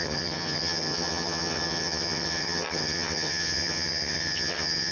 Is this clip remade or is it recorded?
remade